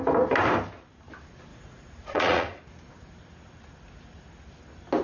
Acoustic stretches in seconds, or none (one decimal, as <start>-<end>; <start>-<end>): 0.0-1.5; 2.6-5.0